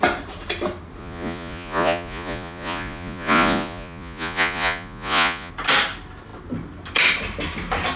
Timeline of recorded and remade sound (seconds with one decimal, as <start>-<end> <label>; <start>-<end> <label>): 0.0-1.0 recorded; 1.0-5.5 remade; 5.5-8.0 recorded